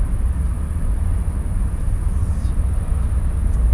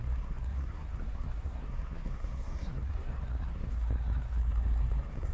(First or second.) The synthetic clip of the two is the second